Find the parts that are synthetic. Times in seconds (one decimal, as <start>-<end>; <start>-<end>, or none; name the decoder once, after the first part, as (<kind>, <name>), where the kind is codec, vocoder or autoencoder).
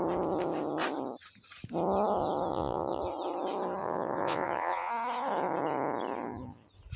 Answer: 2.5-3.0 (vocoder, Vocos); 3.8-4.9